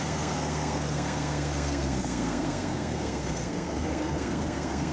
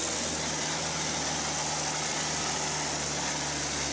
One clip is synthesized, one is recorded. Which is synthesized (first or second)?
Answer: first